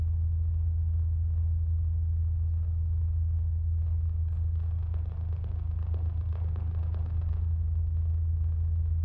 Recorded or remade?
recorded